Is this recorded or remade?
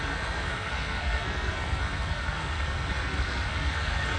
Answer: remade